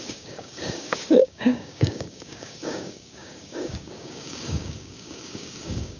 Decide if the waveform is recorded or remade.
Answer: remade